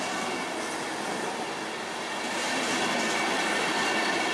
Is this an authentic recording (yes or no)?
yes